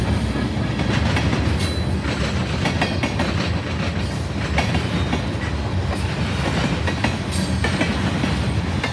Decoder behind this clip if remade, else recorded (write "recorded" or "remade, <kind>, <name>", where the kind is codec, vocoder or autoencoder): recorded